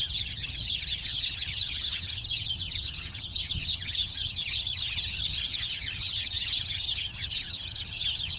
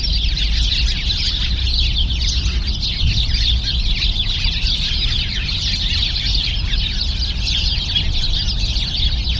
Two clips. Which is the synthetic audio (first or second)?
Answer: first